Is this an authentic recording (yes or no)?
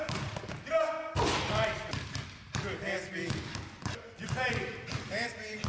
no